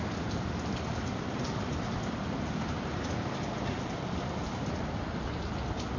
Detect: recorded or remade recorded